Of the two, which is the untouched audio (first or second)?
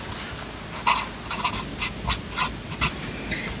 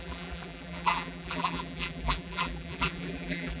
first